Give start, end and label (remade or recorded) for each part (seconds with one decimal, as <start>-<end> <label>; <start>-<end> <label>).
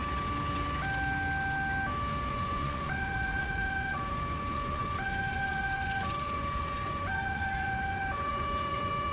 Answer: 0.0-2.3 recorded; 2.3-9.1 remade